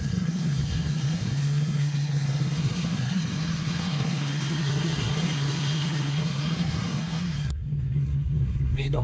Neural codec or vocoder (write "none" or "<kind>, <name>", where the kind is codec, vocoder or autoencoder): codec, SNAC